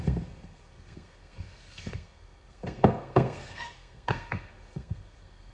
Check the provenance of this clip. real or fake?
fake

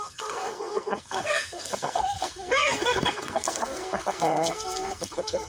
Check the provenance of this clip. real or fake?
fake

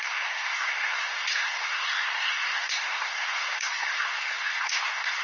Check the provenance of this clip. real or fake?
fake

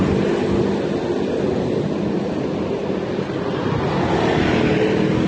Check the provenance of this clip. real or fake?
real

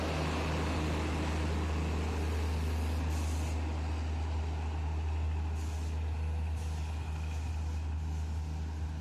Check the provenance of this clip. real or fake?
real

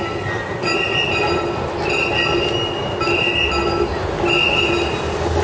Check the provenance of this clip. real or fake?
real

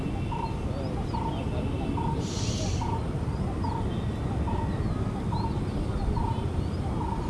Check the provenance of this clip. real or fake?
real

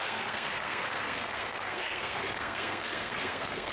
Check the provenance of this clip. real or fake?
fake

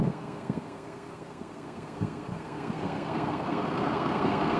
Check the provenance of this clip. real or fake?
fake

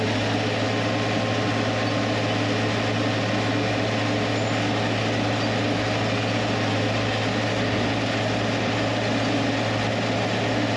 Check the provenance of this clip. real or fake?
real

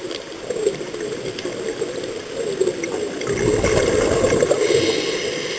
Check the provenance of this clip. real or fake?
real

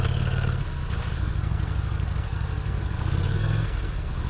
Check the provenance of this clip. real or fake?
fake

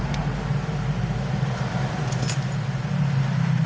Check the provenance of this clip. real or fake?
real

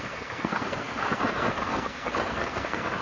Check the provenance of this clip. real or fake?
fake